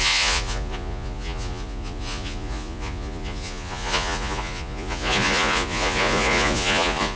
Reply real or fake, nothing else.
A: fake